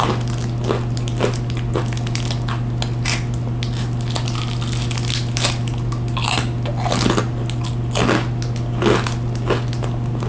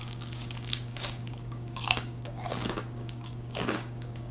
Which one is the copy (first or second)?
second